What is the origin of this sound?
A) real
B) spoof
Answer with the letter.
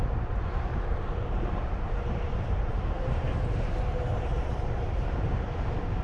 B